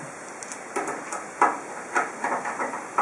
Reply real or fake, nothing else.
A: real